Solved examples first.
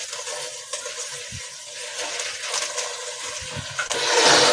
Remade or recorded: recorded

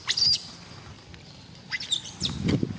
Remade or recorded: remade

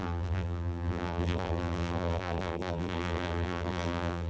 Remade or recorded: remade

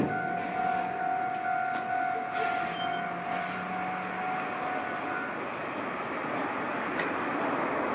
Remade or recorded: recorded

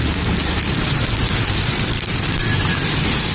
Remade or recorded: recorded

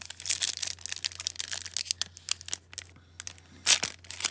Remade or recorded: recorded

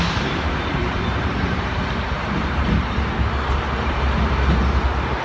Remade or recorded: remade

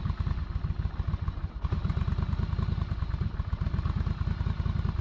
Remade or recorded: recorded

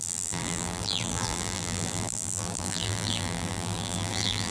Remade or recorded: remade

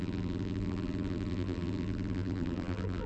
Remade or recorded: remade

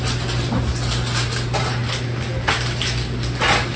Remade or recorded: recorded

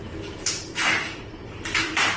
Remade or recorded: remade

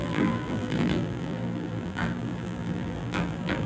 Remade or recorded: remade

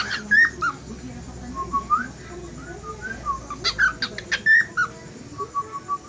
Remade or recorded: recorded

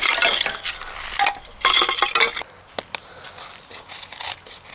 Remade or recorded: recorded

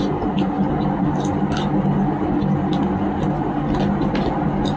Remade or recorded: recorded